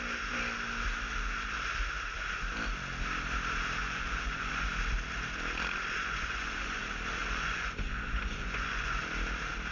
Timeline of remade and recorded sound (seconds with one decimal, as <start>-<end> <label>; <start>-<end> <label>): 0.0-3.8 recorded; 3.8-4.7 remade; 4.7-6.0 recorded; 6.0-6.8 remade; 6.8-7.2 recorded; 7.2-8.9 remade; 8.9-9.7 recorded